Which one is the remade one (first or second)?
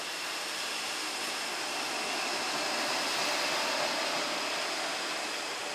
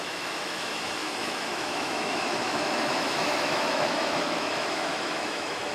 second